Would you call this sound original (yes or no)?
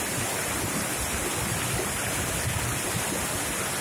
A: yes